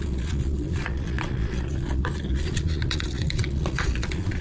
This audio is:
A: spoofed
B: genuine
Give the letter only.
A